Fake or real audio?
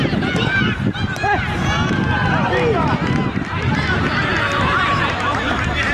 real